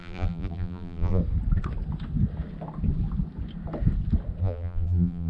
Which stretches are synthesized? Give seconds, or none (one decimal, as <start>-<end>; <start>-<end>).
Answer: 0.0-1.2; 4.4-5.3